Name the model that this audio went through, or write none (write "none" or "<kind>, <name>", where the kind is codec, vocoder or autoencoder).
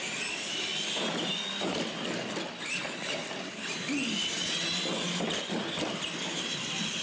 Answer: none